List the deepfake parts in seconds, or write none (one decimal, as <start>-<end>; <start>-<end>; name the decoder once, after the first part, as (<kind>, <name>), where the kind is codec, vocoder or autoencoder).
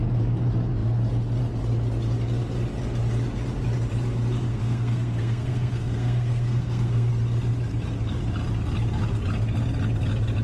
4.5-7.1 (codec, SNAC)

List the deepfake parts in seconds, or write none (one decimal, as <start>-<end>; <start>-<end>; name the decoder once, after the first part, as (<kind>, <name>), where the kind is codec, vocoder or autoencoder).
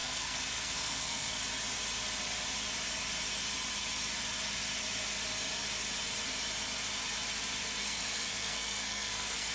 0.0-1.4 (codec, SNAC); 7.8-9.5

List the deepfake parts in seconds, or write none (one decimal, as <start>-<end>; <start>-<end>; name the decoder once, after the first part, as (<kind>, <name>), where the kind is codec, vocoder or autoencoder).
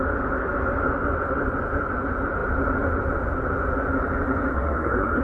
4.5-5.2 (codec, SNAC)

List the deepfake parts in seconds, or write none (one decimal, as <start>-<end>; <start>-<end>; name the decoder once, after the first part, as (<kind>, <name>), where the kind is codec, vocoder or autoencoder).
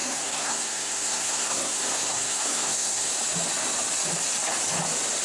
0.0-3.1 (codec, SNAC)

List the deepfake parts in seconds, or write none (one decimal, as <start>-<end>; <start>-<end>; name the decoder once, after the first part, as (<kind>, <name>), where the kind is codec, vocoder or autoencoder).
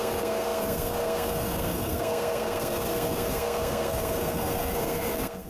0.0-5.5 (codec, SNAC)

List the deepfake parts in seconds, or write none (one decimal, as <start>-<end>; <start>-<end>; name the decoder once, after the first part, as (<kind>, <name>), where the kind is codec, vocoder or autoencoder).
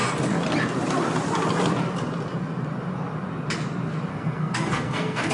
4.1-5.3 (codec, SNAC)